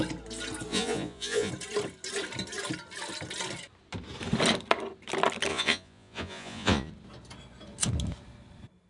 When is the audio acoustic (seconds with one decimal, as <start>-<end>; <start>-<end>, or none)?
0.0-0.7; 1.5-5.5; 6.9-8.9